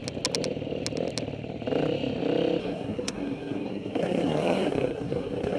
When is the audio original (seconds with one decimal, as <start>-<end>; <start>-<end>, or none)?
0.0-2.6